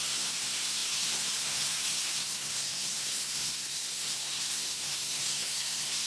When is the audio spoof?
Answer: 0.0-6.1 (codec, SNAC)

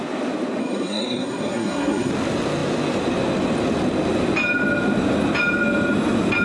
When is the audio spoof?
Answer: 0.6-2.1 (codec, SNAC)

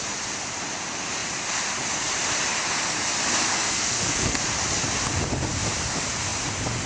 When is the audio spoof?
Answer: 3.5-4.4 (codec, SNAC)

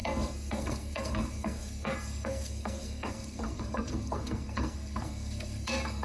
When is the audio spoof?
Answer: 0.0-6.0 (codec, SNAC)

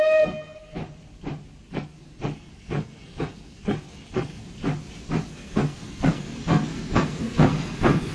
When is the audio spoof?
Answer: 0.0-0.8 (codec, SNAC); 1.7-4.4; 5.3-8.1

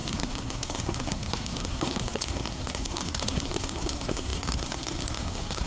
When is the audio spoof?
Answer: 0.0-5.7 (codec, SNAC)